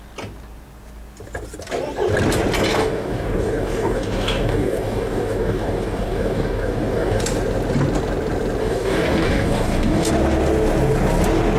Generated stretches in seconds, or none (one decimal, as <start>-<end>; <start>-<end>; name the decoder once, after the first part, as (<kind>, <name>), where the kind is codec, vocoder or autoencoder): 2.8-7.2 (codec, DAC); 8.6-10.1